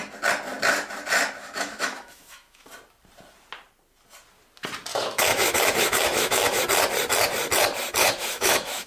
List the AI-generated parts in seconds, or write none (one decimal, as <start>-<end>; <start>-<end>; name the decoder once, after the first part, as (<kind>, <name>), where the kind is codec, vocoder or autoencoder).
1.4-2.7 (autoencoder, DAC-VAE); 4.9-6.6; 8.0-8.9